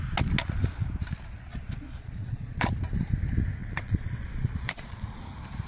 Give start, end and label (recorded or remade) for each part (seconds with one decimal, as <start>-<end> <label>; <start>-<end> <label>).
0.0-1.5 recorded; 1.5-2.7 remade; 2.7-3.6 recorded; 3.6-5.2 remade; 5.2-5.7 recorded